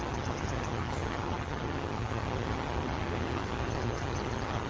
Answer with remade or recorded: remade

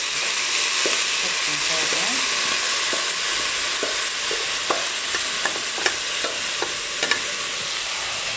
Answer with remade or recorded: recorded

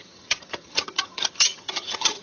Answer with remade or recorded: remade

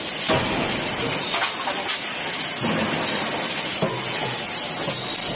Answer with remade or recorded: recorded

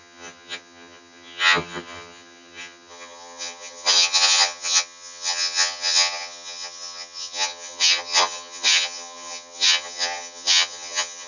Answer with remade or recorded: remade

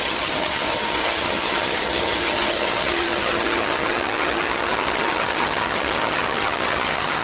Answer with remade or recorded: remade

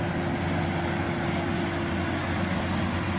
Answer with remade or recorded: recorded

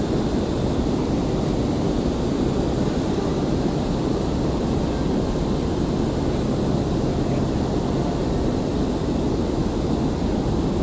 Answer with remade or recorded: recorded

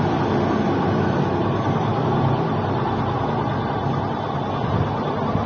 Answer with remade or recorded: recorded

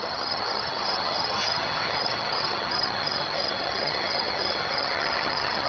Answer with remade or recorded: remade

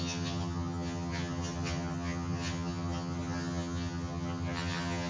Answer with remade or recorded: remade